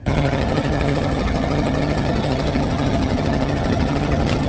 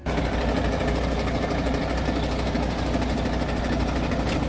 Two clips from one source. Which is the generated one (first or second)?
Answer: first